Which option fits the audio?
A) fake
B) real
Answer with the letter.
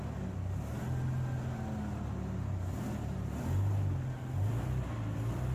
B